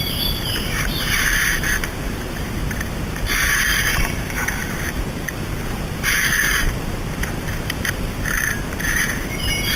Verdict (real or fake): fake